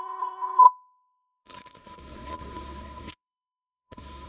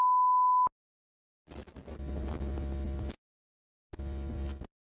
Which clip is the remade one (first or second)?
first